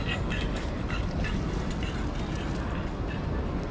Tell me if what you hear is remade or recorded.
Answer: recorded